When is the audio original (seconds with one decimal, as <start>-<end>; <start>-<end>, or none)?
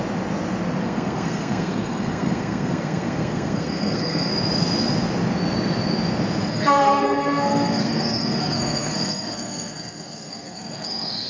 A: 0.0-0.8; 4.3-6.5